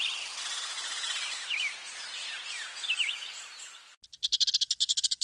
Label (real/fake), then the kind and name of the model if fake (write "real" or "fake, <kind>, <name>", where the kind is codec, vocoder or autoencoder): real